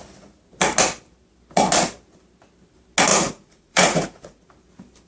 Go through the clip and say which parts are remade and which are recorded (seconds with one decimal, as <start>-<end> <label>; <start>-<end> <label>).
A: 0.0-3.1 recorded; 3.1-4.5 remade; 4.5-5.1 recorded